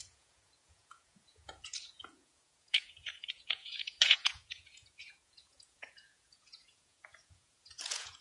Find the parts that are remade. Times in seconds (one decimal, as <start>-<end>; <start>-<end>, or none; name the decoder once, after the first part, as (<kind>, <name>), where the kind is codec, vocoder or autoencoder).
0.0-8.2 (vocoder, Vocos)